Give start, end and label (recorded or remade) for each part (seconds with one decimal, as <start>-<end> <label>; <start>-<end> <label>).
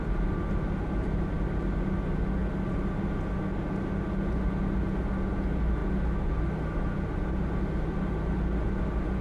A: 0.0-9.2 recorded